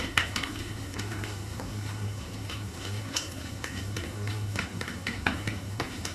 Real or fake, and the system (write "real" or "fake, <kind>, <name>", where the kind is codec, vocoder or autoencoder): fake, codec, SNAC